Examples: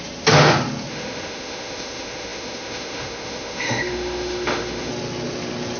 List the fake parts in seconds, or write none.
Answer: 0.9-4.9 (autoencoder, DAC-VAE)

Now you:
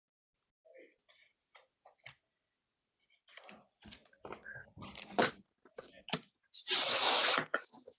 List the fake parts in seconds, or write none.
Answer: none

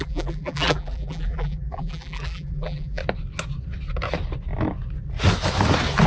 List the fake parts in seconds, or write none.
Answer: 0.0-3.0 (vocoder, BigVGAN v2)

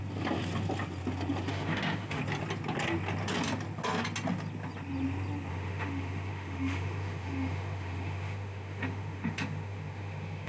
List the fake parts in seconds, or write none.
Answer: 1.5-2.2 (autoencoder, DAC-VAE); 5.5-10.5

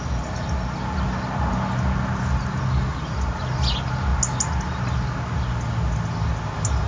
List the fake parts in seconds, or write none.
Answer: none